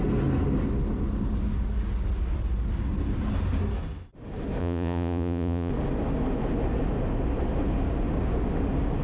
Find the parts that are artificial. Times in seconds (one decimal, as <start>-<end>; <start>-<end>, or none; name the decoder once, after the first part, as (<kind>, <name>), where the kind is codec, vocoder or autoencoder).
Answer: 4.6-5.7 (vocoder, Vocos)